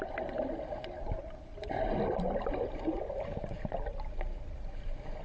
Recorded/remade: recorded